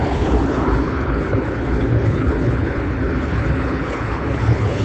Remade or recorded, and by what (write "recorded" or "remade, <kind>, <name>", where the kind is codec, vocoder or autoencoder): remade, codec, HILCodec